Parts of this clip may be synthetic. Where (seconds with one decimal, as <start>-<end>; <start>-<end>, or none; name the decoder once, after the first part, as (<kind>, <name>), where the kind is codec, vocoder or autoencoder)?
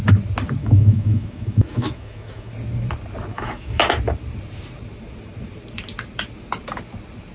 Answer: 0.6-2.5 (autoencoder, DAC-VAE); 3.3-3.8